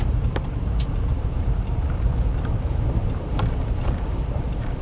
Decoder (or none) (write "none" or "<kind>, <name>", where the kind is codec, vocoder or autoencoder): vocoder, BigVGAN v2